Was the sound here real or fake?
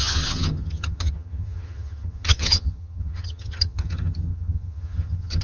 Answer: fake